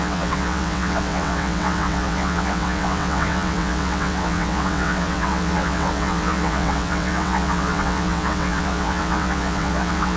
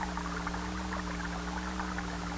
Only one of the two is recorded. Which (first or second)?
second